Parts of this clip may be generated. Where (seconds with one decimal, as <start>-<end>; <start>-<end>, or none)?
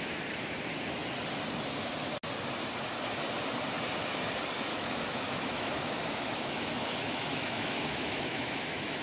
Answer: 4.7-9.0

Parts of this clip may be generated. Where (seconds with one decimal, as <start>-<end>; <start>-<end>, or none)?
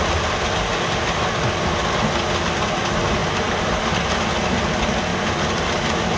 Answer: 3.2-3.8; 5.1-6.2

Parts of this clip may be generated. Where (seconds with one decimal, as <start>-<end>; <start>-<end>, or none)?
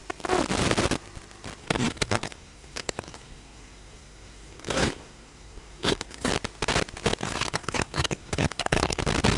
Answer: 1.6-6.3; 7.2-9.0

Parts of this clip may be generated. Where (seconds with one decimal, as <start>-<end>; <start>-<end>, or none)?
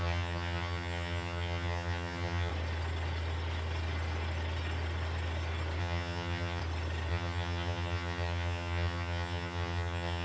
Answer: 0.0-2.5; 5.8-6.6; 7.1-10.2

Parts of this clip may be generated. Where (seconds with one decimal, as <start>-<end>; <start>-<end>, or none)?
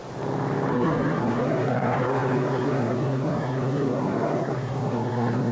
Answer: 0.7-5.5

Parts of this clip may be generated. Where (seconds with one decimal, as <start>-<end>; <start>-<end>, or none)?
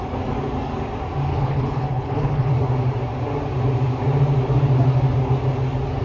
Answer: 1.3-2.5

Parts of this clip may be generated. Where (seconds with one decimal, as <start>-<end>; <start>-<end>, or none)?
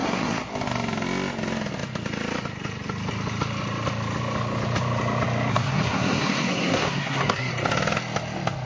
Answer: 0.0-0.5; 5.5-7.5